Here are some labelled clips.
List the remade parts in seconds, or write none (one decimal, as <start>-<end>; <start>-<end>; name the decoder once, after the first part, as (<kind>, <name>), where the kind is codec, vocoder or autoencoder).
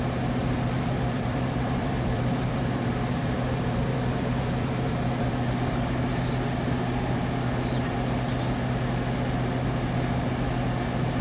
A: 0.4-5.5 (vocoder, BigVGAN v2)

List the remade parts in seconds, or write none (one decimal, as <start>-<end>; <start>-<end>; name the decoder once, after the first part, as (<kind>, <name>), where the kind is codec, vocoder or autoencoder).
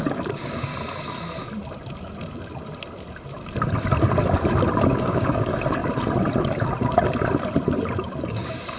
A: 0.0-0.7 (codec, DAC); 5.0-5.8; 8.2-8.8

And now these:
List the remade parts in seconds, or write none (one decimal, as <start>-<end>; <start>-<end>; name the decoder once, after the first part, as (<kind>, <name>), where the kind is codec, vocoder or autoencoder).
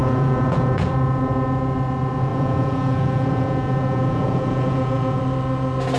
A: 0.0-0.9 (vocoder, Vocos); 2.3-5.2